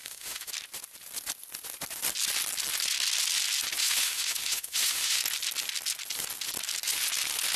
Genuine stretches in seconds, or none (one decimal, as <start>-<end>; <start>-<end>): 0.5-3.8; 5.2-7.6